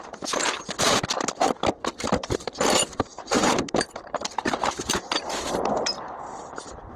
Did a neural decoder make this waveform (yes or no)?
yes